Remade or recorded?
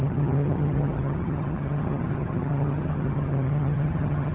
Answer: remade